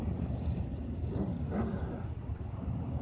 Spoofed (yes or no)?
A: yes